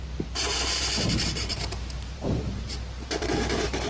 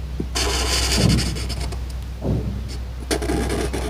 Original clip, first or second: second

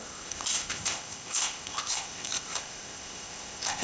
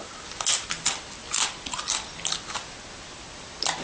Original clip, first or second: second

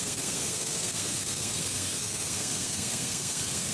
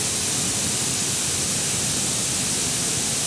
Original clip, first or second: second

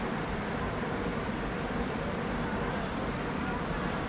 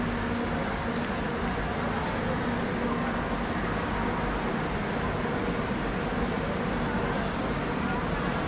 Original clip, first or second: second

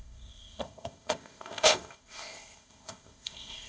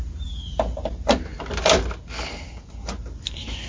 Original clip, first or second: second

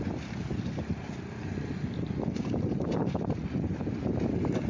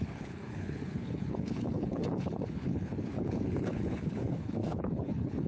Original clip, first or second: first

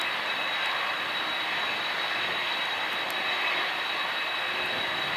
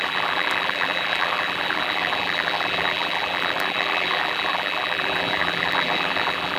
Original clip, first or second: first